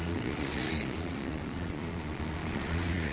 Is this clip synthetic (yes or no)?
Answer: yes